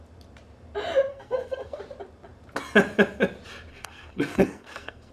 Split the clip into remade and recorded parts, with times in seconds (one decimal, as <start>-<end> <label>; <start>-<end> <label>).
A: 0.0-1.1 recorded; 1.1-1.8 remade; 1.8-3.7 recorded; 3.7-5.1 remade